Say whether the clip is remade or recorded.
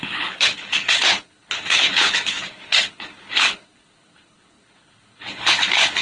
remade